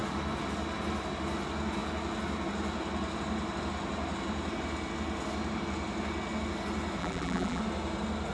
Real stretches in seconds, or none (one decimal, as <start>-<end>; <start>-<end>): 0.0-7.0; 7.6-8.3